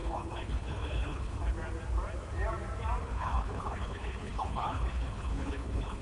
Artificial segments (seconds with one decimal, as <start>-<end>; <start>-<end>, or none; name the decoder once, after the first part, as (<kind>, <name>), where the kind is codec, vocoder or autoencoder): 0.0-1.4 (codec, HILCodec); 3.0-6.0